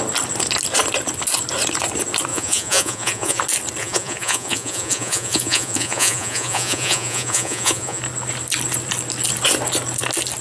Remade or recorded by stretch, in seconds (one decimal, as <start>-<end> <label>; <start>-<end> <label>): 0.0-2.3 recorded; 2.3-3.4 remade; 3.4-3.8 recorded; 3.8-8.0 remade; 8.0-10.4 recorded